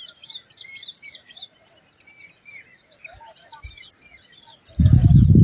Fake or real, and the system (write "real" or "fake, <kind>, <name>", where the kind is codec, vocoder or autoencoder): real